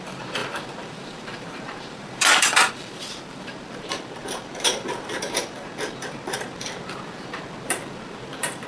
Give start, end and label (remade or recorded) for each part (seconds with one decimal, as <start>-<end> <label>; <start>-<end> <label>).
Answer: 0.0-8.7 remade